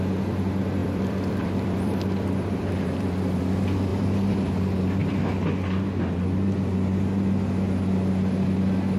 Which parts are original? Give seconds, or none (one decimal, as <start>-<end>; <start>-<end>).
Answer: 0.0-0.8; 3.4-3.9; 4.5-9.0